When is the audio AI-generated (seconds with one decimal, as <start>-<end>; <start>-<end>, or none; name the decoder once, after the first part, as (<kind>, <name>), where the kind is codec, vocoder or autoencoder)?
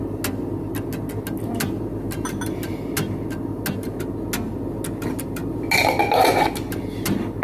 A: none